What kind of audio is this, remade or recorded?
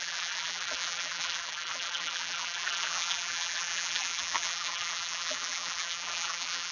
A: remade